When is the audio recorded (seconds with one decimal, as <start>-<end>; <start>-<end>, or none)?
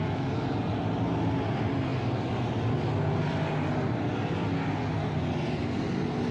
0.0-6.3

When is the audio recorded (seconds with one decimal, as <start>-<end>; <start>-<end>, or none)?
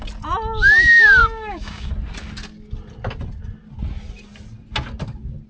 0.0-1.2; 1.9-5.5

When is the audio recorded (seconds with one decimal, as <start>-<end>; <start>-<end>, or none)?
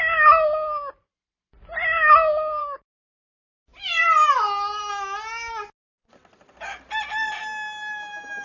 0.0-2.6; 3.2-8.4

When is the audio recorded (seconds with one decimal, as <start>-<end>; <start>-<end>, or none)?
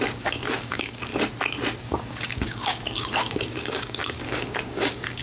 1.1-1.8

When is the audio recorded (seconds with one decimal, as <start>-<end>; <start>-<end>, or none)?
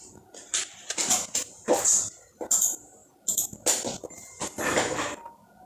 0.0-5.7